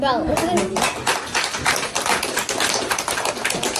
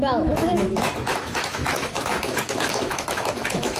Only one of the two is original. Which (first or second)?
first